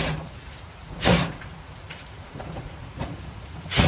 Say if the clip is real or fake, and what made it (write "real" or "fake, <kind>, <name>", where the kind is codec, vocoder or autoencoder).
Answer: fake, vocoder, Vocos